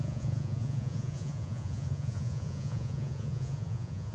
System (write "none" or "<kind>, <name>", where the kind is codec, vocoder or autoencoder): vocoder, Vocos